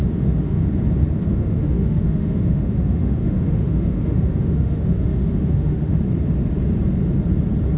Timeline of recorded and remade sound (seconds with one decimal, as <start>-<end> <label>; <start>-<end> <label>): 0.0-0.8 remade; 0.8-1.3 recorded; 1.3-6.0 remade; 6.0-7.8 recorded